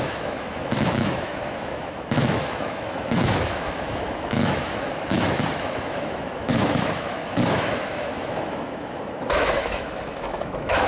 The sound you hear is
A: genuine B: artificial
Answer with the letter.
B